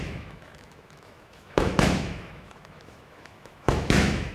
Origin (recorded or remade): remade